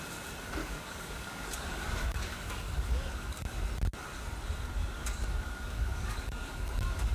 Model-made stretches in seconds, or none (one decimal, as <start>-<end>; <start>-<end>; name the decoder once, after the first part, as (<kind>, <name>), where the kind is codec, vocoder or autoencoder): 0.6-3.6 (codec, DAC); 4.8-7.1